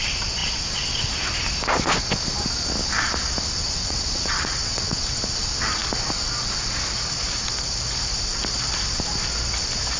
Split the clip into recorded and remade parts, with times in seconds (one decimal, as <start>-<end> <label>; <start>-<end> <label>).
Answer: 0.0-3.6 recorded; 3.6-5.2 remade; 5.2-10.0 recorded